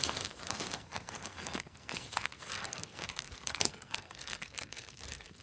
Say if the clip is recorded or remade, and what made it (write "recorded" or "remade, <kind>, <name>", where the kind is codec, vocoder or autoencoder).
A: remade, codec, SNAC